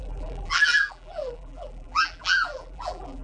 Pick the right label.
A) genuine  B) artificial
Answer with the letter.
B